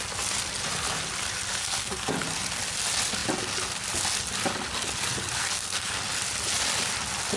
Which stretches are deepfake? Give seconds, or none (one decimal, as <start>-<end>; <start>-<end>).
1.6-2.1; 5.4-5.9